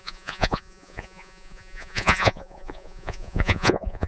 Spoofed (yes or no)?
yes